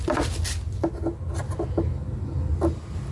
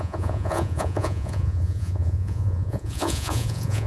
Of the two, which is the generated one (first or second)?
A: second